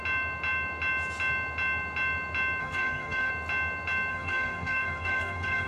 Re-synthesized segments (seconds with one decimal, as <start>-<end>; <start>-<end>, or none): 2.6-3.3; 4.1-5.7